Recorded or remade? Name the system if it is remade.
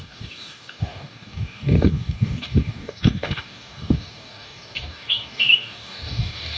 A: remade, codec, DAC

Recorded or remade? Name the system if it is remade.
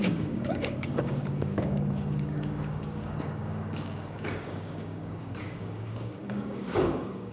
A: remade, codec, DAC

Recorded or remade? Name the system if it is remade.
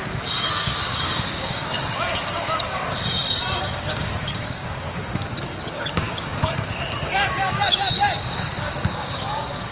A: remade, codec, DAC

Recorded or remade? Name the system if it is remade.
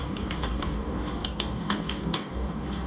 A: remade, codec, DAC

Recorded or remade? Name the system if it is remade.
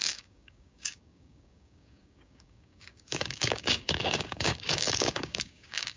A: remade, codec, DAC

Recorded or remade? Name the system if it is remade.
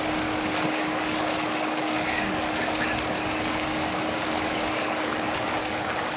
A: remade, codec, DAC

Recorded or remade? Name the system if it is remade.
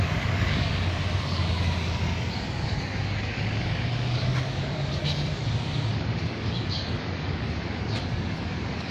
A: remade, codec, DAC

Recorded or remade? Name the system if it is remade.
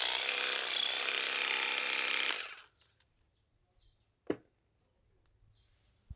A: recorded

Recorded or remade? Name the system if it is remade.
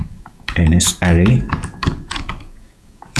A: remade, codec, DAC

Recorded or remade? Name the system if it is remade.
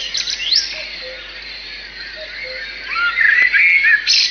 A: recorded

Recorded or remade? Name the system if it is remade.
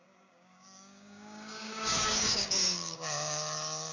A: remade, codec, DAC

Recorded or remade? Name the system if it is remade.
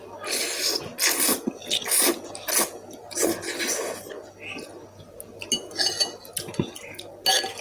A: recorded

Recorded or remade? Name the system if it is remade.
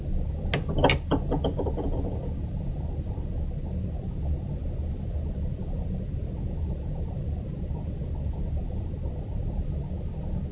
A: recorded